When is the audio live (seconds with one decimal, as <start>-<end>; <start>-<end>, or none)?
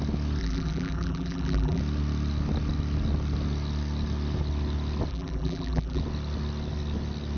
0.0-0.4; 1.8-5.1; 6.0-7.4